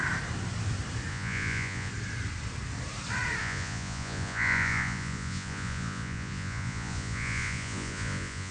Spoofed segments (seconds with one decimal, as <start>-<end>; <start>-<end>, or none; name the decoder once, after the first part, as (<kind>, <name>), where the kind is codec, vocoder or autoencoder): 1.1-1.9 (vocoder, Vocos); 3.4-8.5